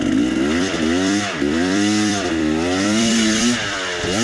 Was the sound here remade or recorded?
remade